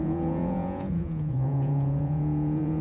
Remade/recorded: remade